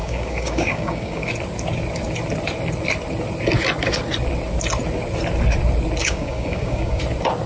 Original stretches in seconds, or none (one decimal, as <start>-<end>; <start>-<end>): 1.3-6.0; 7.0-7.5